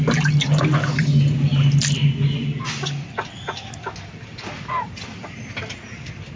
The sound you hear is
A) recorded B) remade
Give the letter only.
A